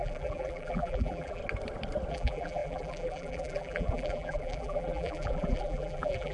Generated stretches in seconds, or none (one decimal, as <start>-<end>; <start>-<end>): 0.0-1.4; 2.1-6.3